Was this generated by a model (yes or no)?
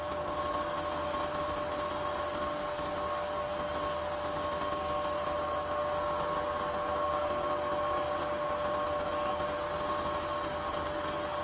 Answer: no